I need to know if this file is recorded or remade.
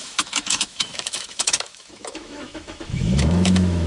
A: remade